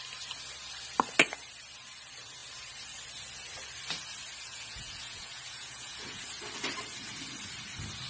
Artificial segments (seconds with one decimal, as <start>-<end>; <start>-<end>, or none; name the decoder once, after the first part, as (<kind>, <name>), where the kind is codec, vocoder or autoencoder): 4.5-6.2 (vocoder, Vocos)